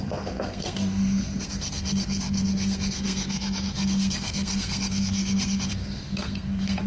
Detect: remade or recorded remade